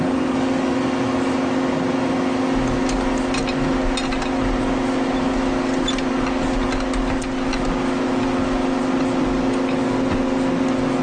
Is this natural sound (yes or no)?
yes